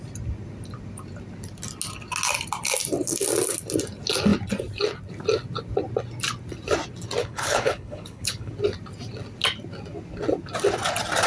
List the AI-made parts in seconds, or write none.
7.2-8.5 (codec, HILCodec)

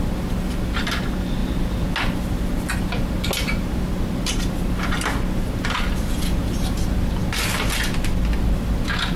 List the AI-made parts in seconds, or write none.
none